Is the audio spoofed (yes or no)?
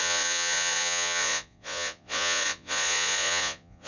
yes